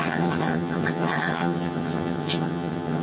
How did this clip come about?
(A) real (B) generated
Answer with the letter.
B